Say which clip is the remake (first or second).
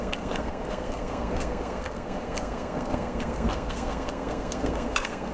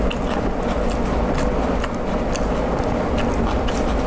first